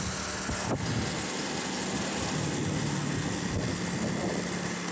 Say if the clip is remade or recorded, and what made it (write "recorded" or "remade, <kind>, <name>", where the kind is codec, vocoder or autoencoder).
recorded